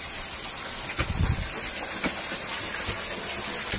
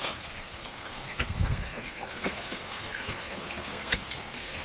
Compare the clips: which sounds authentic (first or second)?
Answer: first